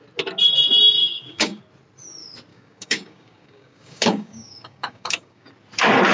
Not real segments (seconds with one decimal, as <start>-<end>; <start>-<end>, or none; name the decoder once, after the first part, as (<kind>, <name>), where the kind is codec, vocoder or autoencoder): 1.0-1.6 (codec, DAC); 2.5-5.5